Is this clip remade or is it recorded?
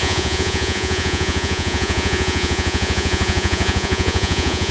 remade